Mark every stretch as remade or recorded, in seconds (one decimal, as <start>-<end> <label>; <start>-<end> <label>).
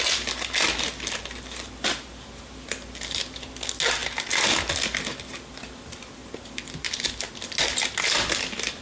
0.0-8.8 recorded